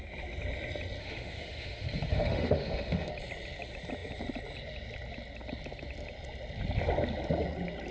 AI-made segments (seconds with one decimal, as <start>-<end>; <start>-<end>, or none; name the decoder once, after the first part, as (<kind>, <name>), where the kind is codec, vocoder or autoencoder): 1.0-3.1 (autoencoder, DAC-VAE)